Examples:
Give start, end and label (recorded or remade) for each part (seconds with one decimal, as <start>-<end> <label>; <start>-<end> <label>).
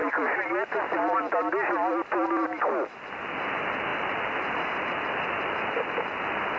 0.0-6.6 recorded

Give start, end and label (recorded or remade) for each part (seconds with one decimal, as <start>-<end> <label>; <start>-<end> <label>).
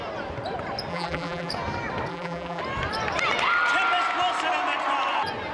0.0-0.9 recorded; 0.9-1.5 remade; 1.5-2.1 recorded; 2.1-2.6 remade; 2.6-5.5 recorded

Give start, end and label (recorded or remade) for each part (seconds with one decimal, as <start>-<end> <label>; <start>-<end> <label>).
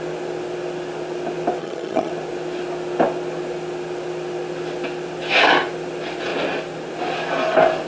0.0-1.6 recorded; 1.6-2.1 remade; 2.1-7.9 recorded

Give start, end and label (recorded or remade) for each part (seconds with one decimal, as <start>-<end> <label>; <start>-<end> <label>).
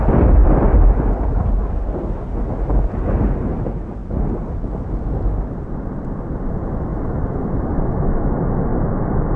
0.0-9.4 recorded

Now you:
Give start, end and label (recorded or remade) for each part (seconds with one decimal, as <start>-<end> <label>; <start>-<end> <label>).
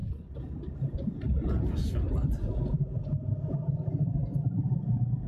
0.0-3.2 remade; 3.2-5.3 recorded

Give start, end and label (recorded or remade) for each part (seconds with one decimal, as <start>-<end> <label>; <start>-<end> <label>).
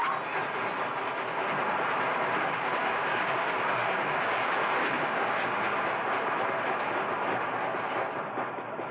0.0-2.8 recorded; 2.8-6.0 remade; 6.0-8.9 recorded